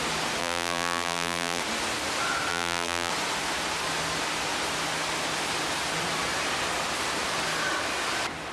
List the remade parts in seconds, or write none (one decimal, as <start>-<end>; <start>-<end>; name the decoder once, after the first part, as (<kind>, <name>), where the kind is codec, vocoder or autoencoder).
0.4-1.6 (vocoder, BigVGAN v2); 2.5-3.1